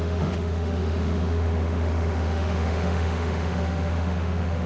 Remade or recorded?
remade